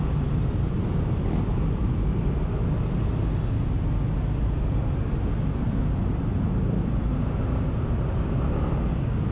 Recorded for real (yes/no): yes